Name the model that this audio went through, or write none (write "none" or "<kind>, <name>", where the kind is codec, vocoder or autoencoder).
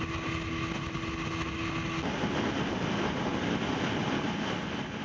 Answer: none